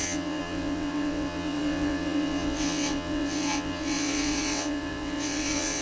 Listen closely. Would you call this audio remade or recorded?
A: remade